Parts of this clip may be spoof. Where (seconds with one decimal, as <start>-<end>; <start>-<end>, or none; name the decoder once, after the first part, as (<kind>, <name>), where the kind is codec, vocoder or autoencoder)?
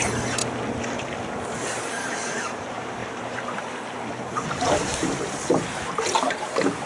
0.0-0.4 (vocoder, BigVGAN v2); 1.8-6.9